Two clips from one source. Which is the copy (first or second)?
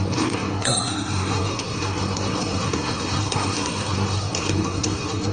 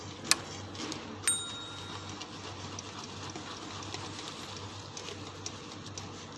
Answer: first